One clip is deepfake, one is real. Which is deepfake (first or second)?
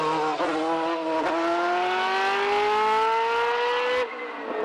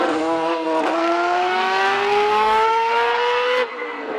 second